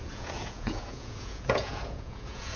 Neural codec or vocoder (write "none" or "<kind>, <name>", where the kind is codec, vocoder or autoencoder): vocoder, Vocos